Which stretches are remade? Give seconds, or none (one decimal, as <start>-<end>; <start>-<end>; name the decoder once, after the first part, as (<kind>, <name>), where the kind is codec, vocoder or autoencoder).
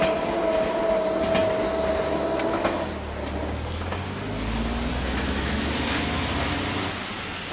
none